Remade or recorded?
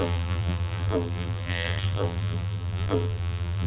remade